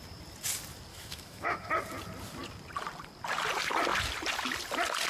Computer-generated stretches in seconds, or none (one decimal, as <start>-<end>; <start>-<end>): 0.9-1.7